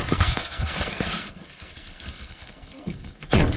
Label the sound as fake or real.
fake